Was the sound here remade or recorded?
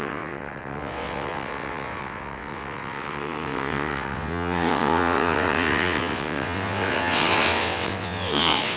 remade